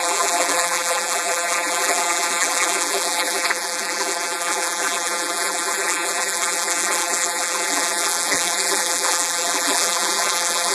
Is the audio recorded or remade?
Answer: remade